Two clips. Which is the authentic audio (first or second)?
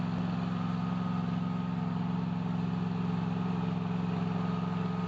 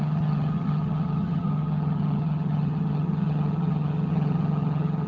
first